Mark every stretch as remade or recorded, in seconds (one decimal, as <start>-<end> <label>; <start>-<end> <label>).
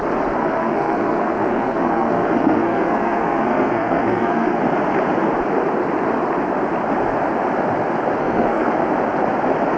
0.0-0.4 recorded; 0.4-4.6 remade; 4.6-8.2 recorded; 8.2-8.7 remade; 8.7-9.8 recorded